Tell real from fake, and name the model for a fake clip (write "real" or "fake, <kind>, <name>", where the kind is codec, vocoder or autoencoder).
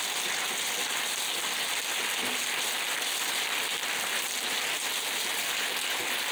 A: real